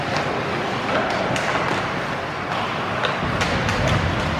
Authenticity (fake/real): real